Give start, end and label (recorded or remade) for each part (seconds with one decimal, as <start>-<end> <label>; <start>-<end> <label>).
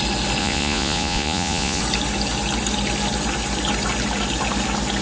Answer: 0.0-0.4 recorded; 0.4-1.8 remade; 1.8-5.0 recorded